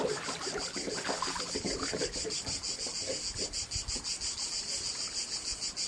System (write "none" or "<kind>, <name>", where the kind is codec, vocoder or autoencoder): none